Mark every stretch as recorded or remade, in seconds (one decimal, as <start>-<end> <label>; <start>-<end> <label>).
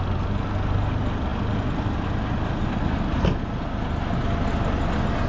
0.0-5.3 recorded